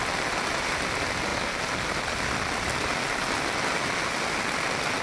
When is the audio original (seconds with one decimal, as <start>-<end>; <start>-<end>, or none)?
0.0-5.0